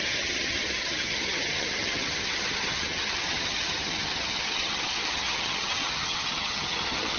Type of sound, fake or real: fake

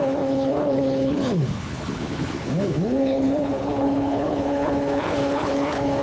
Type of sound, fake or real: fake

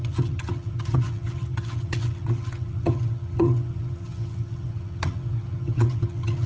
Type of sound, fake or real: fake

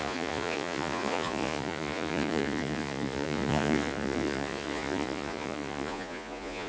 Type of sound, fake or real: fake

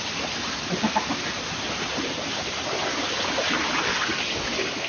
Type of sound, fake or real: real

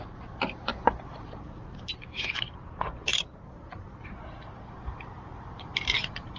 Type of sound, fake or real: fake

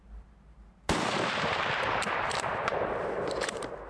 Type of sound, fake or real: fake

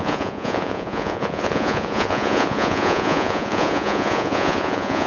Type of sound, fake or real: fake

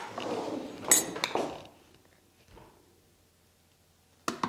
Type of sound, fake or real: real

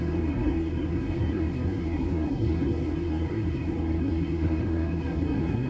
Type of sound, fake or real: fake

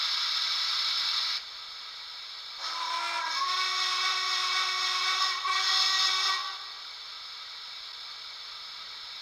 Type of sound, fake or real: real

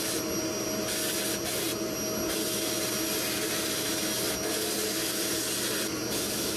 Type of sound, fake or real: real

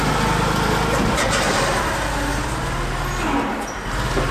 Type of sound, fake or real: real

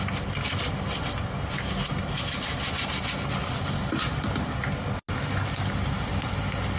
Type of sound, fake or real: real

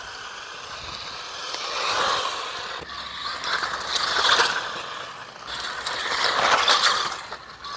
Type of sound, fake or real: real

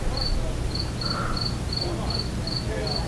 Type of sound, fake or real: real